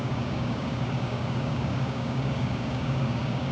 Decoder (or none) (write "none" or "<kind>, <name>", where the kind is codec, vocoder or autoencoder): codec, DAC